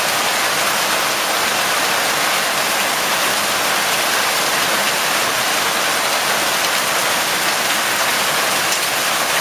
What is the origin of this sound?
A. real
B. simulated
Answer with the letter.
A